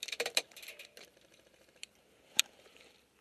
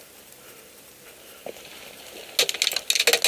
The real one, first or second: second